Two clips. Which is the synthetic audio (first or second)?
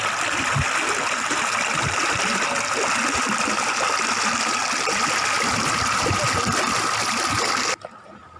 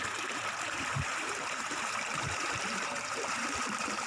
second